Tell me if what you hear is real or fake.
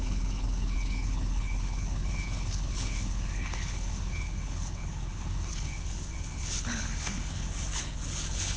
fake